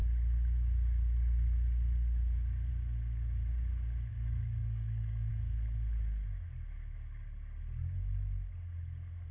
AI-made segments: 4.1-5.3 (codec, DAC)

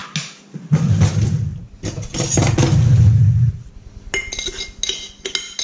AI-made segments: none